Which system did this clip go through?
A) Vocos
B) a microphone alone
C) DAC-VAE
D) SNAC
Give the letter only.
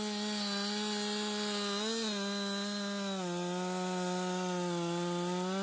B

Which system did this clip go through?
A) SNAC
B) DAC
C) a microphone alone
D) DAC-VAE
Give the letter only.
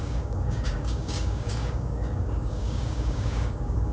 B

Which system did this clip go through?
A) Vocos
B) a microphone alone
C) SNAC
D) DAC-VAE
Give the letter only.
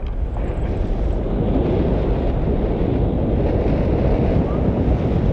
B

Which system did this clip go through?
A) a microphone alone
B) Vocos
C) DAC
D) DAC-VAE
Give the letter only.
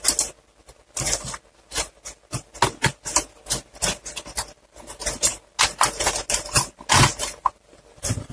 A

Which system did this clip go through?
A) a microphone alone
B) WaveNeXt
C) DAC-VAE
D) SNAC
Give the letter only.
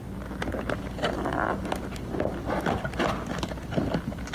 A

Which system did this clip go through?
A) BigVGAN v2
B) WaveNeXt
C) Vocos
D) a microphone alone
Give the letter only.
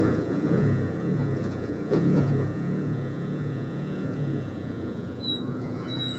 C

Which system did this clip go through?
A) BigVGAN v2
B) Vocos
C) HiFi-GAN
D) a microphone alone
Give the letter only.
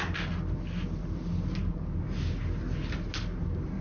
D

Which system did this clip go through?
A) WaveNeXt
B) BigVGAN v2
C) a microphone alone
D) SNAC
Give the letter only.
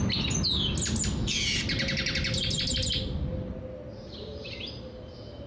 C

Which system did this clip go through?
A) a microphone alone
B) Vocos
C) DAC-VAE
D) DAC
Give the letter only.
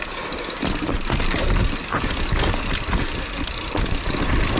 A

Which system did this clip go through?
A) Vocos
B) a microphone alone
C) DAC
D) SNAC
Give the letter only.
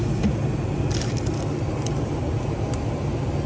B